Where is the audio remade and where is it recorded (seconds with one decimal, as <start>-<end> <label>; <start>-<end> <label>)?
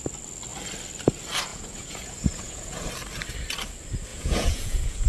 0.0-1.5 recorded; 1.5-2.9 remade; 2.9-4.1 recorded; 4.1-5.1 remade